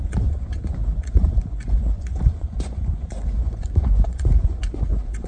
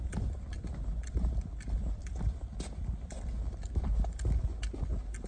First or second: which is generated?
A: first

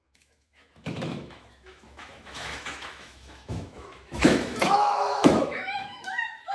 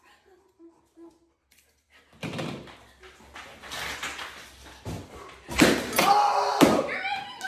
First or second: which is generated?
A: first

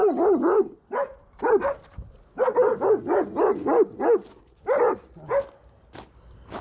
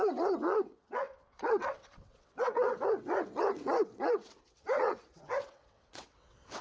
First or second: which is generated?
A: second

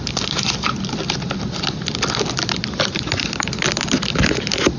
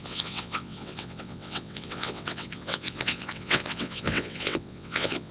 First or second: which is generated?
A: second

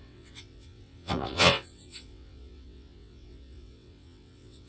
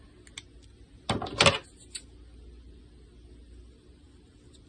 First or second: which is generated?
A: first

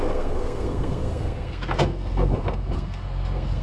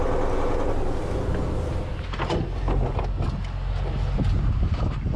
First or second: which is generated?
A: first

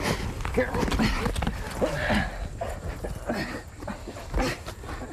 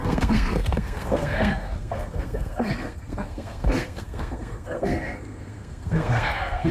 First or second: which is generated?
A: second